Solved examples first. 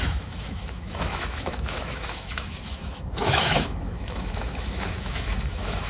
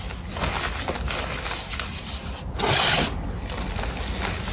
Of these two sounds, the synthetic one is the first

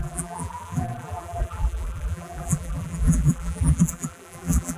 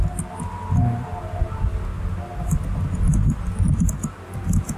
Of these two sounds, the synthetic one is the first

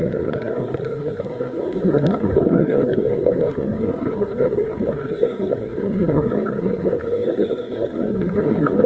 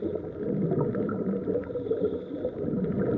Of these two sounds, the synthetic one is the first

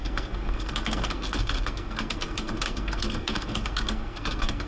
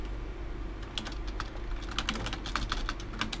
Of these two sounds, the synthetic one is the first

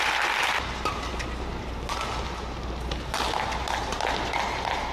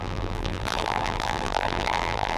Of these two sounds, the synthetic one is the second